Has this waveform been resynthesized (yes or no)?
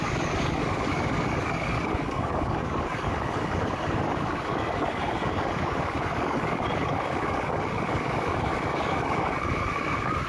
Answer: yes